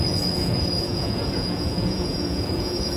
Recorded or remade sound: remade